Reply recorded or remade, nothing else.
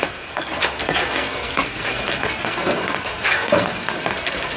remade